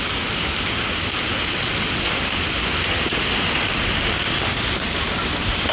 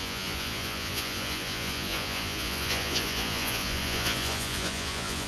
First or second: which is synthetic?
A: second